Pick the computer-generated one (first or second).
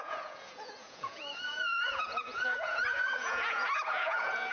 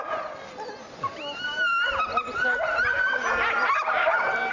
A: first